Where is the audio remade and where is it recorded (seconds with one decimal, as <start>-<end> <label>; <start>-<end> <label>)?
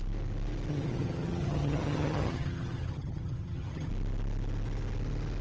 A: 0.0-0.7 recorded; 0.7-3.9 remade; 3.9-5.4 recorded